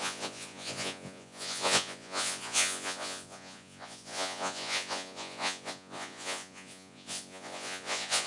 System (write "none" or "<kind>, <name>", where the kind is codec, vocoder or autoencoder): vocoder, Vocos